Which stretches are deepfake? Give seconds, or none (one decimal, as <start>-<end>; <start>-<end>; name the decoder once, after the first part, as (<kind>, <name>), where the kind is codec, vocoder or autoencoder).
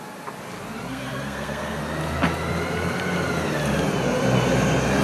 0.9-1.8 (codec, SNAC)